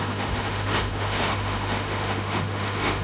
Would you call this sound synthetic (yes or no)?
yes